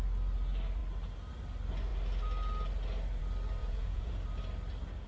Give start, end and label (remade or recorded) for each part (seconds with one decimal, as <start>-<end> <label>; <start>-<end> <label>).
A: 0.0-3.6 recorded; 3.6-4.1 remade; 4.1-5.1 recorded